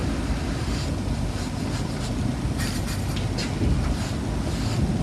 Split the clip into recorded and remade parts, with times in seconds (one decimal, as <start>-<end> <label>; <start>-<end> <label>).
0.0-5.0 recorded